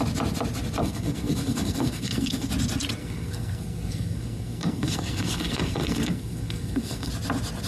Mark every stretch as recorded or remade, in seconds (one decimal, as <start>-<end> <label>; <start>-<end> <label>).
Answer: 0.0-0.8 recorded; 0.8-2.5 remade; 2.5-3.0 recorded; 3.0-7.1 remade; 7.1-7.7 recorded